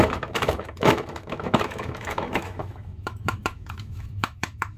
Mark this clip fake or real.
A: fake